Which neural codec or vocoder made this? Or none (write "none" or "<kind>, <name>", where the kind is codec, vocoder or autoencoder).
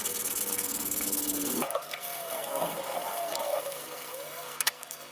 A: codec, SNAC